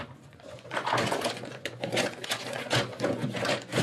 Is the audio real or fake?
fake